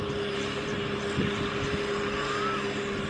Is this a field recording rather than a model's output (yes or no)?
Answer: yes